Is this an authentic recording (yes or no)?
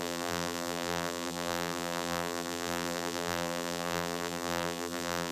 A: no